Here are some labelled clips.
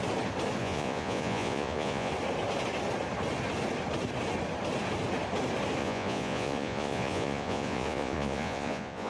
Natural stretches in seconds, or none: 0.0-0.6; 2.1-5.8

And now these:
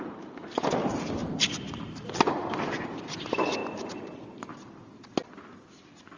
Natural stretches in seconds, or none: 0.0-1.2; 3.0-3.6; 4.7-6.2

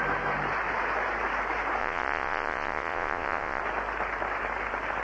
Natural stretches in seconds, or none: 0.0-1.8; 3.6-5.0

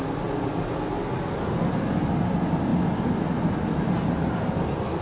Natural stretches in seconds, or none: 0.0-5.0

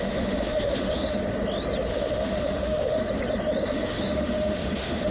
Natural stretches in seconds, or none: 1.2-1.9; 3.0-3.6